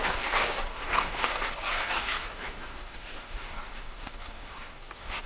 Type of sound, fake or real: fake